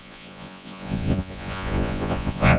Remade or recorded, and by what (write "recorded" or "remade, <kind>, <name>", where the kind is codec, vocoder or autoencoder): remade, vocoder, Vocos